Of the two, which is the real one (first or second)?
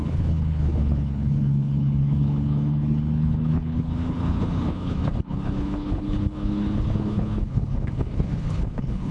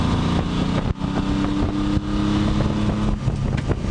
second